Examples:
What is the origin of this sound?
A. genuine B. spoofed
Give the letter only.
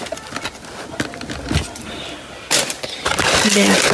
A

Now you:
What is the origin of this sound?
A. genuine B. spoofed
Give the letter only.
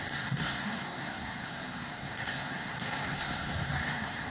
B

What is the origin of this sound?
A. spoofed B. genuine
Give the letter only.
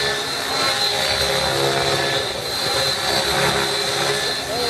B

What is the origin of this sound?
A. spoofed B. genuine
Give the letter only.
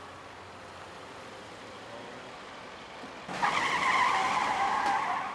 B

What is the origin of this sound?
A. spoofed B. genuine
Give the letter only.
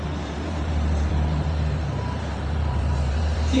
A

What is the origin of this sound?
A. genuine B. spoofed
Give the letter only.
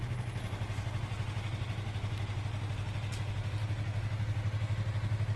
A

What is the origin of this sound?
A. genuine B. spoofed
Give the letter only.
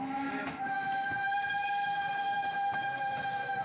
B